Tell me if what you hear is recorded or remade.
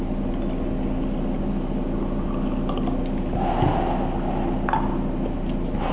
recorded